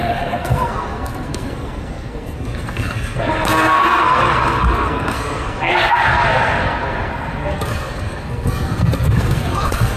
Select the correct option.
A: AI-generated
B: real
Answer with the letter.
A